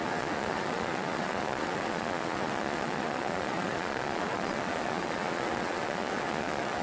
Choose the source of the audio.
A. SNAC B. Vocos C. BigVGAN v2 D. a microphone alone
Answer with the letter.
B